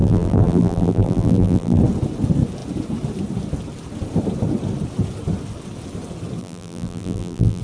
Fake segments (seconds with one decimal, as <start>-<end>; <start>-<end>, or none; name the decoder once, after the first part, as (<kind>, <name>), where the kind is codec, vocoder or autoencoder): 0.0-1.8 (vocoder, BigVGAN v2); 6.4-7.6